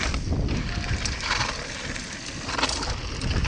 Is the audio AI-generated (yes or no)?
no